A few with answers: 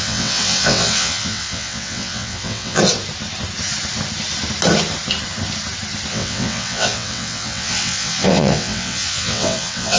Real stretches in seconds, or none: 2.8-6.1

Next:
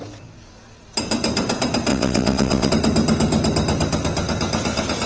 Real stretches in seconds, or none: 0.0-1.9; 2.7-5.1

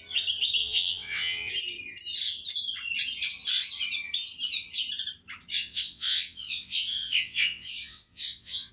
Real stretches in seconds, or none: 0.0-0.6; 1.5-5.5

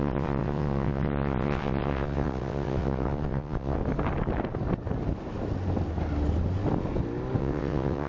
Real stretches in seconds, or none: 3.8-7.4